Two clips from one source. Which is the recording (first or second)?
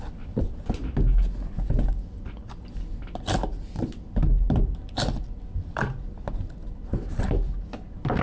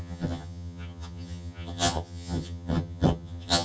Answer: first